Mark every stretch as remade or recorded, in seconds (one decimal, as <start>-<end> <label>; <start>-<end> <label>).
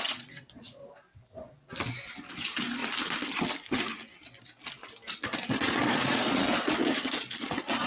0.0-0.8 remade; 0.8-2.3 recorded; 2.3-2.8 remade; 2.8-5.1 recorded; 5.1-7.9 remade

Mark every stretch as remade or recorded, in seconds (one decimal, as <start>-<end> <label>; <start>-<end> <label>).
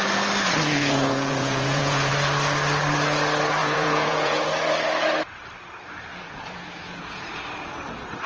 0.0-0.8 recorded; 0.8-2.1 remade; 2.1-3.6 recorded; 3.6-4.4 remade; 4.4-6.1 recorded; 6.1-7.2 remade; 7.2-8.3 recorded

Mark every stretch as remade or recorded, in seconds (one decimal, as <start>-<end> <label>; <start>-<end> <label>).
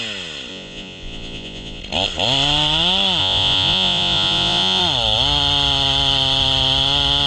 0.0-0.5 recorded; 0.5-1.8 remade; 1.8-3.2 recorded; 3.2-4.8 remade; 4.8-7.3 recorded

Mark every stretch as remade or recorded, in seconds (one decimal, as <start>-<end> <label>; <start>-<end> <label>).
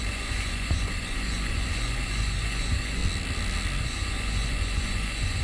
0.0-3.0 remade; 3.0-3.8 recorded; 3.8-5.4 remade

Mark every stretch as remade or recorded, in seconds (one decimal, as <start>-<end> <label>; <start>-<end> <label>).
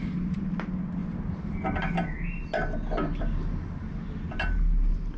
0.0-5.2 recorded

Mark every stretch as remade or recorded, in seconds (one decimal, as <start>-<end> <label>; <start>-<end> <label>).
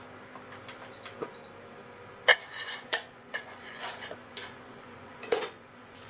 0.0-2.3 recorded; 2.3-6.1 remade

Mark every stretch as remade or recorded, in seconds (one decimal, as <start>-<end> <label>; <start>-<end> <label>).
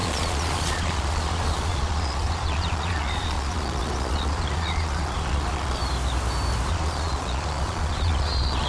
0.0-5.8 remade; 5.8-6.7 recorded; 6.7-8.7 remade